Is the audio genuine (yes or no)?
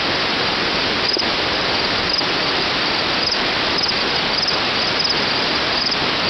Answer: yes